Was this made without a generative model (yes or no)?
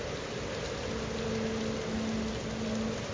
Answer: yes